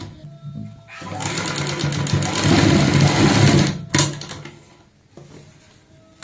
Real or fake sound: real